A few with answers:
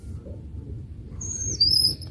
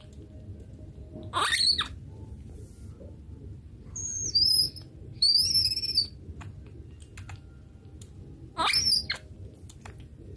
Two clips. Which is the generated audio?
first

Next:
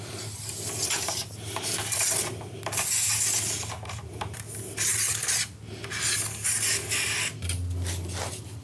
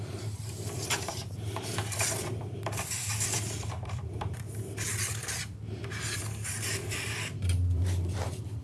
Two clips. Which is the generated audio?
second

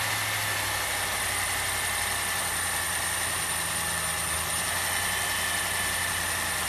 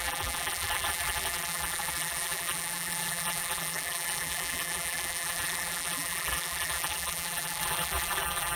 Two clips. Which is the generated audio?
second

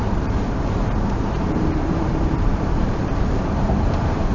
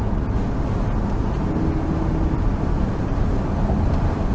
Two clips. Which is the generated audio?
first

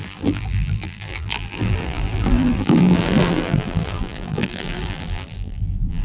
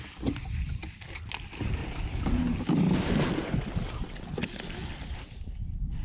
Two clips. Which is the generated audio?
first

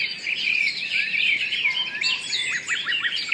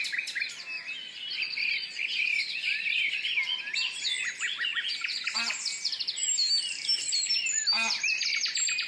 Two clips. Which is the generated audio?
first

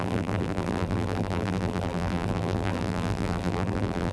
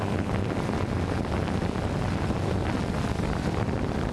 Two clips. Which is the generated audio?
first